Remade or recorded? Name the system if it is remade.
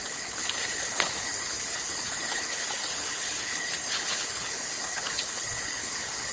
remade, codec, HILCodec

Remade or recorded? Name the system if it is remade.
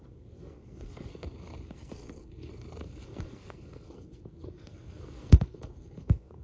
remade, codec, SNAC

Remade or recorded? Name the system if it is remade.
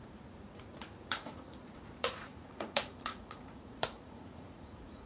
remade, vocoder, Vocos